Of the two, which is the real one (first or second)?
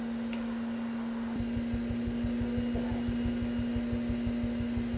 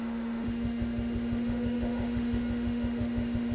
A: first